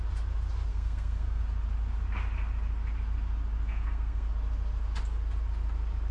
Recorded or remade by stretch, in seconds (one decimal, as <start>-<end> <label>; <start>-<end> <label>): 0.0-0.7 recorded; 0.7-1.4 remade; 1.4-3.7 recorded; 3.7-4.3 remade; 4.3-6.1 recorded